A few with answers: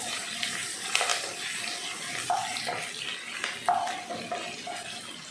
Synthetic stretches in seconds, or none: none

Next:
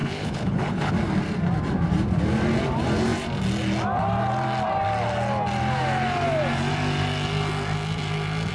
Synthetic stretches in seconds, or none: 0.0-0.9 (codec, HILCodec)

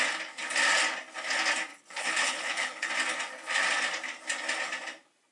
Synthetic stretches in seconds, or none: 1.7-2.9 (codec, HILCodec)

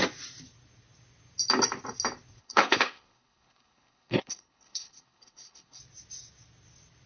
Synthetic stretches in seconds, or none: 2.4-5.8 (codec, HILCodec)

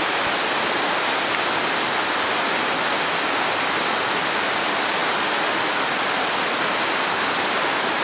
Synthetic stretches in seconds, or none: none

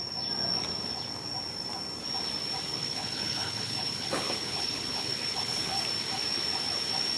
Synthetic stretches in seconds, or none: 2.7-5.8 (codec, HILCodec)

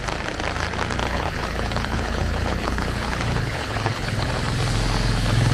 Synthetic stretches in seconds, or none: 1.0-4.3 (codec, HILCodec)

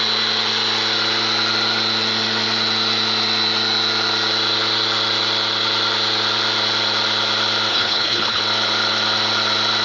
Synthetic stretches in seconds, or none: 7.7-8.4 (codec, HILCodec)